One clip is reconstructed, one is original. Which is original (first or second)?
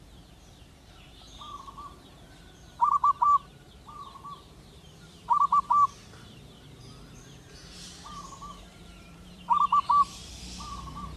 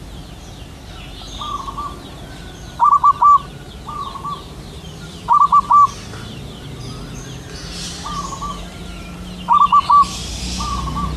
second